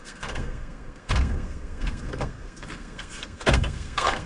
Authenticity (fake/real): fake